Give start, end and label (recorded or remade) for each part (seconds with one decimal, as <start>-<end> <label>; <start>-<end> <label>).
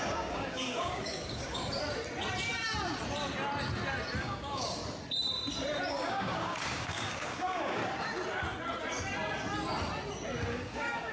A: 0.0-1.6 remade; 1.6-4.2 recorded; 4.2-4.8 remade; 4.8-5.9 recorded; 5.9-7.8 remade; 7.8-10.5 recorded; 10.5-11.1 remade